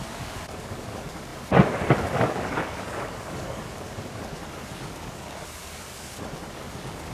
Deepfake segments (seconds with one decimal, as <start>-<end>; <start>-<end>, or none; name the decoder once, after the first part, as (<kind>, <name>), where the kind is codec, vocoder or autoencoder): 0.0-7.1 (codec, DAC)